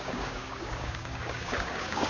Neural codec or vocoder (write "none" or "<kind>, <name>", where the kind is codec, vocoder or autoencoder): codec, DAC